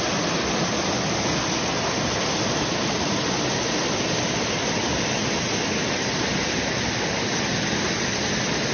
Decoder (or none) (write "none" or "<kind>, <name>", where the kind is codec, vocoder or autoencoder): none